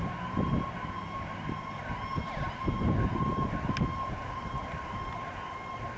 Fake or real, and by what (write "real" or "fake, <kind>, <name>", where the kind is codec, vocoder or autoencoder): real